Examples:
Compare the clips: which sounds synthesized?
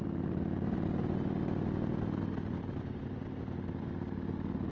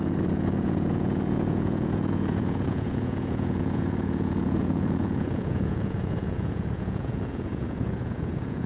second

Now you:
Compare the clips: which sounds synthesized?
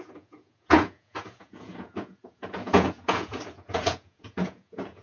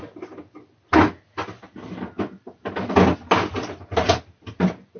first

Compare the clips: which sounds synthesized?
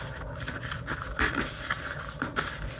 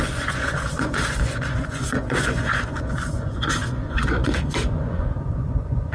second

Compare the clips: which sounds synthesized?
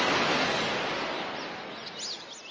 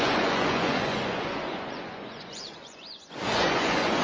second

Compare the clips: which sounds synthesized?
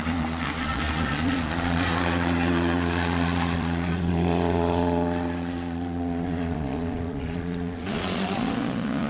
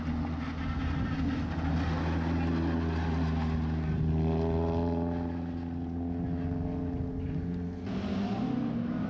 first